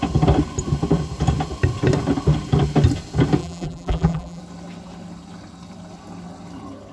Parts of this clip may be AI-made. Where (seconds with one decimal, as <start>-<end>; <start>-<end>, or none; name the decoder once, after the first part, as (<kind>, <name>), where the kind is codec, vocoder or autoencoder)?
3.4-4.4 (vocoder, BigVGAN v2)